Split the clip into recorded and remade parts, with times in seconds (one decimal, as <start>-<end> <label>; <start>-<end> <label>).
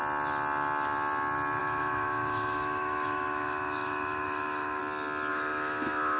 0.0-1.6 recorded; 1.6-4.8 remade; 4.8-5.3 recorded; 5.3-6.2 remade